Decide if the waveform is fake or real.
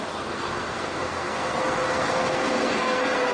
fake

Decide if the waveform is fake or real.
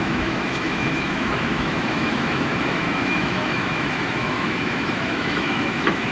fake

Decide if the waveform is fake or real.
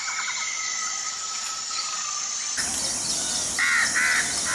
fake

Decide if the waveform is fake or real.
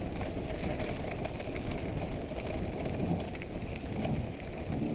real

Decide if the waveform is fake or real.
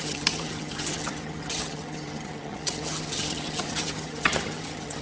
fake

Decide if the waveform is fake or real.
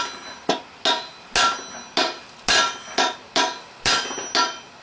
real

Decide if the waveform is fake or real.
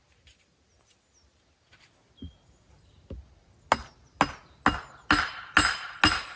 real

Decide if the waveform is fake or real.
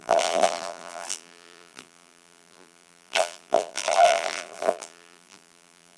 fake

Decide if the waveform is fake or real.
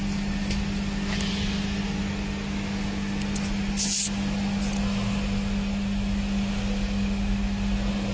real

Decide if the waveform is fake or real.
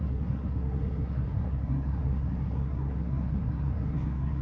fake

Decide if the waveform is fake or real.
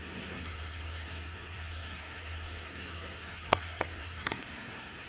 fake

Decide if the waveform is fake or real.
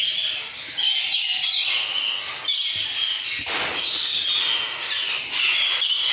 real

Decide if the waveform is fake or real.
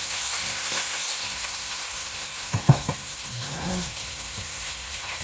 fake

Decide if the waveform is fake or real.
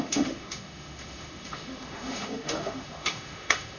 fake